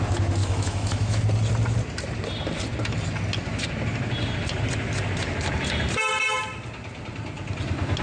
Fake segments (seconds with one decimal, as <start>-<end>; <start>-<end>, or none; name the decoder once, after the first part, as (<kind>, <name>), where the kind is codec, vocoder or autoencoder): 0.4-1.2 (autoencoder, DAC-VAE)